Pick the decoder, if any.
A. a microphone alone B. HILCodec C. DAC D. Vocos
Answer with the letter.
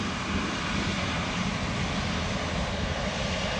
A